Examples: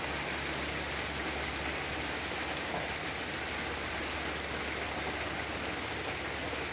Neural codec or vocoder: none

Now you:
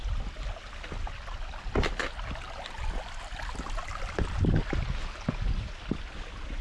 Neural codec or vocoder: none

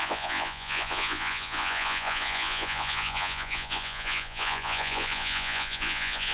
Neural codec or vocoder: vocoder, Vocos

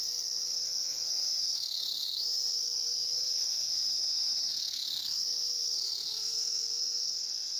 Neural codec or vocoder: codec, SNAC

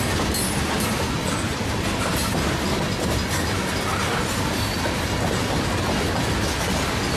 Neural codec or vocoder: none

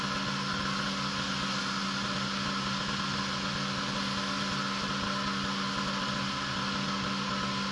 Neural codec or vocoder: none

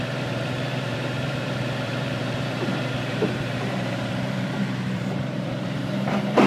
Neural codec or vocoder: vocoder, BigVGAN v2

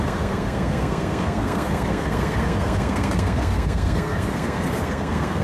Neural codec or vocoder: codec, SNAC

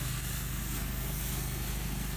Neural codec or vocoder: codec, SNAC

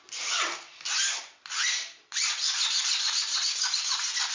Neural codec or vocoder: none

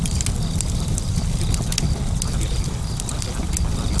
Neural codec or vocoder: none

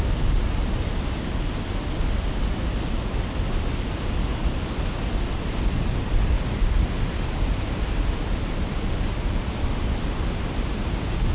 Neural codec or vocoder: none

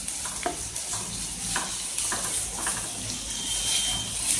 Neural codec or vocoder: none